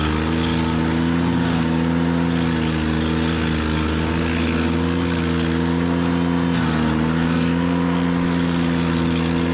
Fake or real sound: real